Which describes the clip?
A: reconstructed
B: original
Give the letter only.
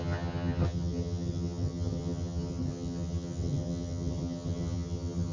A